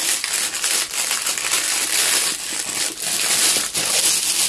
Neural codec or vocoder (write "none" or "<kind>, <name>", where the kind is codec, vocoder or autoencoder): none